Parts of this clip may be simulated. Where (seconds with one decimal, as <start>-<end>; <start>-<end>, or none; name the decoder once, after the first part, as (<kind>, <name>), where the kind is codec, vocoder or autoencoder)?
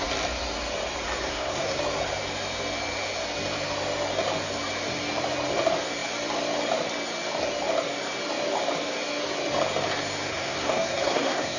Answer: 1.3-1.8 (codec, SNAC); 10.3-11.6